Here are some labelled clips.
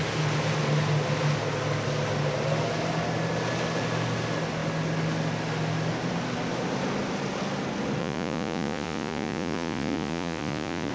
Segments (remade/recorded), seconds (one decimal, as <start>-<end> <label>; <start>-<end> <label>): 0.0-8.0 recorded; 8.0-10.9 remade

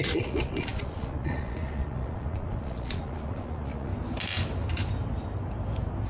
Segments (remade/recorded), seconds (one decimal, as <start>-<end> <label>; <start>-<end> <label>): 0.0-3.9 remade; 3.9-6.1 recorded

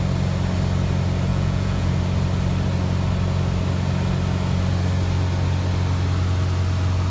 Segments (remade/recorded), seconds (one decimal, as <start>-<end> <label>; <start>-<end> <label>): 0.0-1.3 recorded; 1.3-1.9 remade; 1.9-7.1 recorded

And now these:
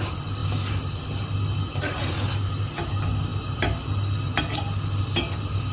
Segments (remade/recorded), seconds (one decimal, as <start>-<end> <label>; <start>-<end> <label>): 0.0-5.7 recorded

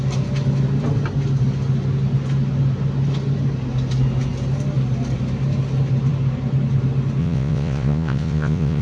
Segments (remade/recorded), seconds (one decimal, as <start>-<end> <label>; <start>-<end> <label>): 0.0-7.2 recorded; 7.2-8.8 remade

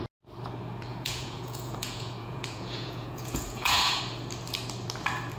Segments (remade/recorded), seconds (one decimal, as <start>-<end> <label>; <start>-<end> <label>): 0.0-0.9 recorded; 0.9-4.0 remade; 4.0-5.4 recorded

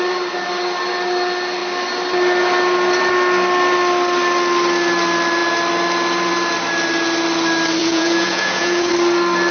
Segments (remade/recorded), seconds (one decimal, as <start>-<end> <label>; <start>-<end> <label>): 0.0-7.8 recorded; 7.8-8.9 remade; 8.9-9.5 recorded

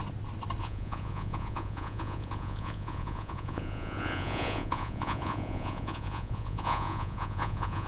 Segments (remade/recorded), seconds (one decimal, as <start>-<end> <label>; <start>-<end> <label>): 0.0-0.6 recorded; 0.6-7.9 remade